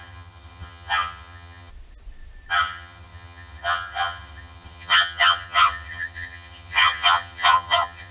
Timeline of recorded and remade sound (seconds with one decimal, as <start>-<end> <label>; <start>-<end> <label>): 0.0-1.7 remade; 1.7-2.5 recorded; 2.5-8.1 remade

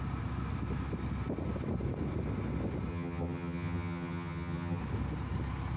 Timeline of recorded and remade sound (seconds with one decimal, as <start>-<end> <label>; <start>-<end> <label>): 0.0-2.9 recorded; 2.9-4.8 remade; 4.8-5.8 recorded

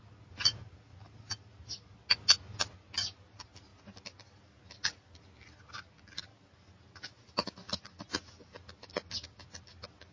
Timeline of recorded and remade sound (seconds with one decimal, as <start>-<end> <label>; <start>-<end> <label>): 0.0-10.1 recorded

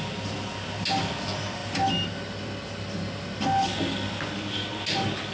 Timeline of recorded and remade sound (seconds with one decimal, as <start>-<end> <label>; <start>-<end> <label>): 0.0-5.3 recorded